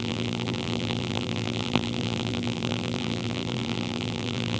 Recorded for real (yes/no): no